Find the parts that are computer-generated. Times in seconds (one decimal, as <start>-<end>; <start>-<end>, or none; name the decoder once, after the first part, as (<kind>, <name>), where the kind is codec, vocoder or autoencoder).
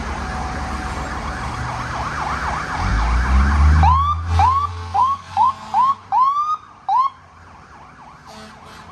4.7-5.5 (codec, SNAC)